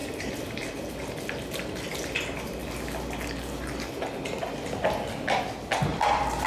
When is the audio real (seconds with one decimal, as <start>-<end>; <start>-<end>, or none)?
0.0-5.9